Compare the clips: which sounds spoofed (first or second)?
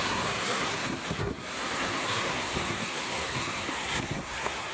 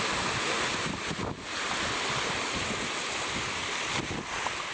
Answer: first